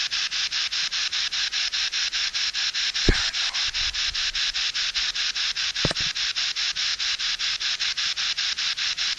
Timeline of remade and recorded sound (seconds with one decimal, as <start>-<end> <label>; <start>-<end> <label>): 0.0-6.9 recorded; 6.9-7.9 remade; 7.9-9.2 recorded